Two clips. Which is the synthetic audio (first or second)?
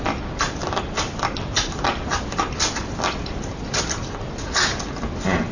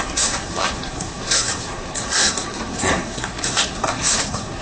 second